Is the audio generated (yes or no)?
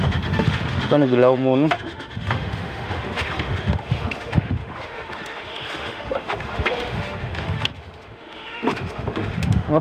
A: yes